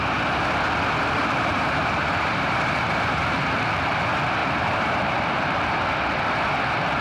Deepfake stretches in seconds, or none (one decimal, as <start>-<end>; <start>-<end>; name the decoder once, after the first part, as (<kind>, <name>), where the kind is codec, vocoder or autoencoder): 1.2-3.2 (vocoder, BigVGAN v2); 4.4-5.6